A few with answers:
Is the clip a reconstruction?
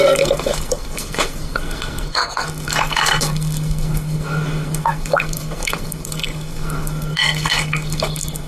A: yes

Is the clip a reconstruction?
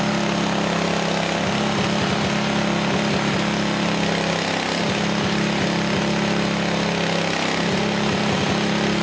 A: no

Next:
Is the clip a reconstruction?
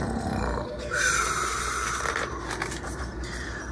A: yes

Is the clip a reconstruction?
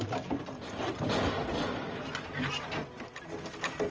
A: no